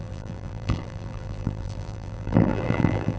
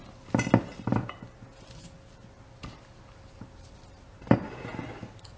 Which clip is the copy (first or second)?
first